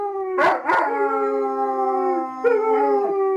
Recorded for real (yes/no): yes